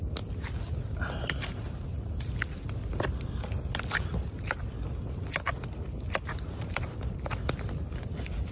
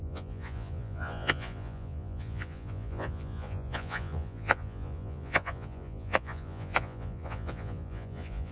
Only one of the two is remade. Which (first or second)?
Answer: second